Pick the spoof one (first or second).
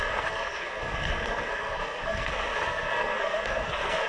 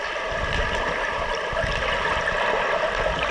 first